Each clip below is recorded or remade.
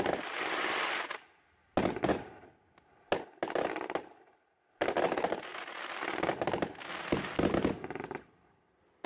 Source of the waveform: recorded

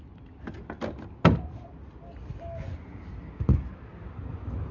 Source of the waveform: recorded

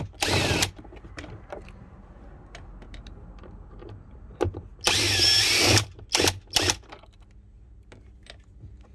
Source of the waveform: recorded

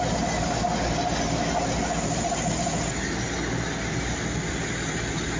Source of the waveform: recorded